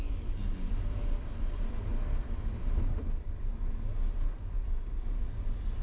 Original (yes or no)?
yes